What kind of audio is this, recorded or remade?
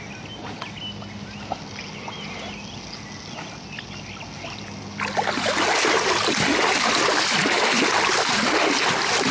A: recorded